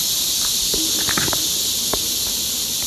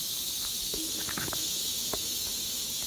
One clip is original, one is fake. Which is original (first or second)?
first